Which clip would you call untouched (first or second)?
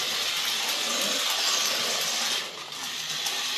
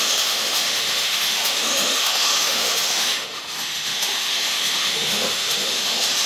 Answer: first